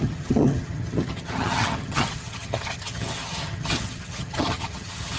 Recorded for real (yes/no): no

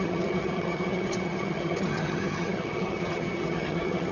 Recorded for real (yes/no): no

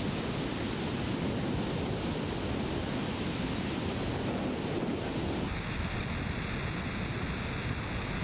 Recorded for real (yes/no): yes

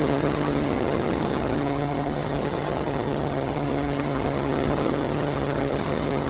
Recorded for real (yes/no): no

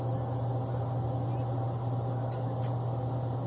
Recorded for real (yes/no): yes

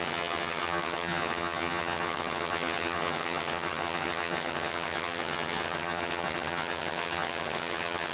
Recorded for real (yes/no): no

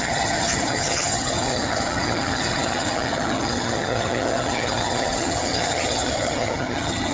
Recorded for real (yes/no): no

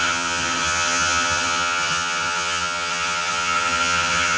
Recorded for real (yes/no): no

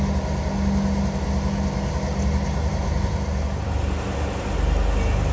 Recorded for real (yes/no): yes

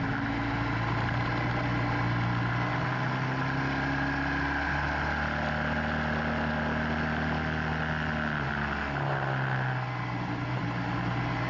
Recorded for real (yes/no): yes